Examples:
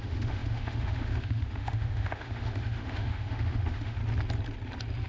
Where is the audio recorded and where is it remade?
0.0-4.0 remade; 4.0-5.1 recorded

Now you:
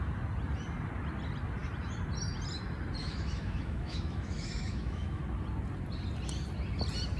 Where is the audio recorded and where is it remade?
0.0-3.0 recorded; 3.0-5.2 remade; 5.2-7.2 recorded

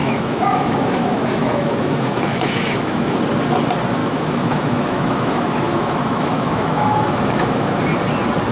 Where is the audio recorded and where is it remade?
0.0-3.2 remade; 3.2-4.0 recorded; 4.0-7.8 remade; 7.8-8.5 recorded

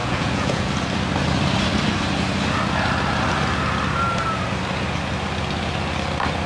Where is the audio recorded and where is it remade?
0.0-0.7 remade; 0.7-6.5 recorded